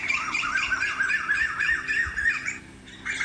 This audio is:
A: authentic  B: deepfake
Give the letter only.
B